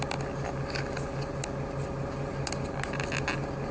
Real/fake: real